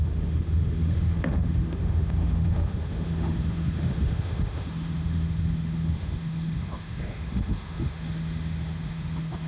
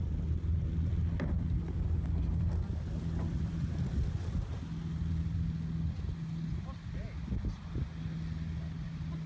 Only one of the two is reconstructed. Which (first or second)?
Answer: first